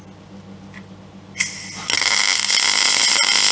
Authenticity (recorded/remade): recorded